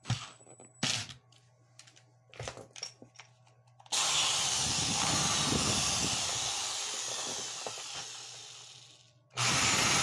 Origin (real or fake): real